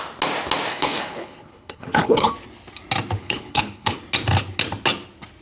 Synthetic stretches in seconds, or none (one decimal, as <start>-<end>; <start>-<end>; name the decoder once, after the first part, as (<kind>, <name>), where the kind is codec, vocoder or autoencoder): 0.7-2.3 (codec, HILCodec); 3.2-4.0